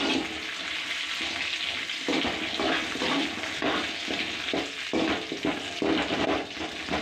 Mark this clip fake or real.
real